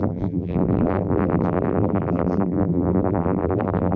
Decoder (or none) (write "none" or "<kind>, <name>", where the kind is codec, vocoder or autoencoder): vocoder, BigVGAN v2